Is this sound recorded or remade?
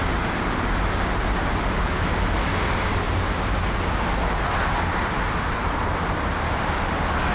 recorded